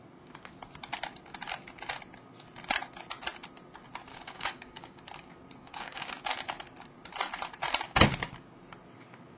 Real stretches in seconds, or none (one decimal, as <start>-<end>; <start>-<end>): 0.0-4.1; 5.0-5.6; 6.1-9.4